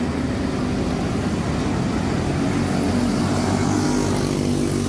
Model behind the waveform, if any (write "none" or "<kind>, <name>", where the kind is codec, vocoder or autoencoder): none